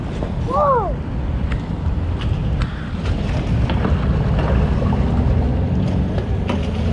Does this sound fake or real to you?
real